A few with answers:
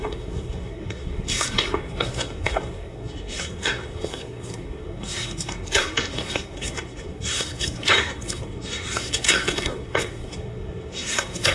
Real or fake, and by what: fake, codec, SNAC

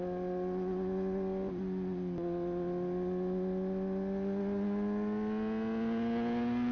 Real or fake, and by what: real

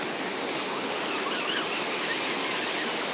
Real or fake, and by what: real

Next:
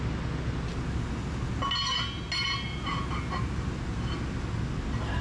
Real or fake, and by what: real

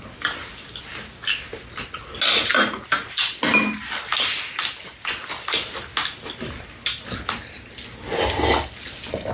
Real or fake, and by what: real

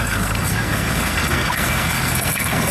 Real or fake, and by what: fake, codec, SNAC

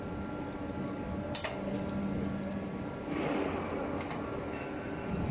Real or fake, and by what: real